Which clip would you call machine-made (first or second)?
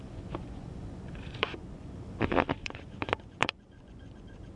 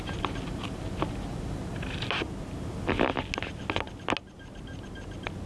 first